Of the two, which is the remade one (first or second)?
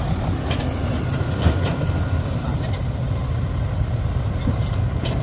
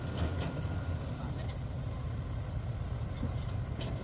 first